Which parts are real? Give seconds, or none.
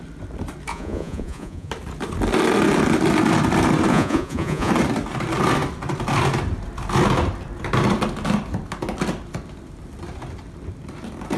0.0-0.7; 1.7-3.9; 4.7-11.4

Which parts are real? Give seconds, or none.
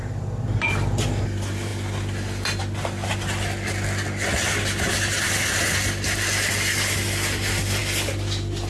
0.0-8.7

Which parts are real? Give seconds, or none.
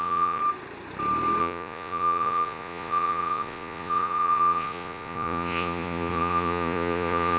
0.4-1.4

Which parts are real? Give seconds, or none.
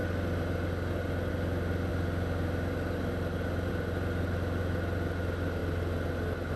0.0-6.6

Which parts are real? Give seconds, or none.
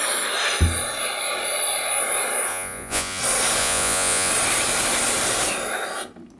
0.0-2.5; 3.2-3.6; 4.3-6.4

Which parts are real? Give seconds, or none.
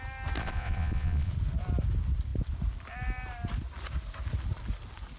0.0-0.4; 1.3-5.2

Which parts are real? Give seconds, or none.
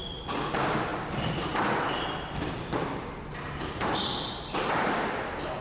0.0-5.6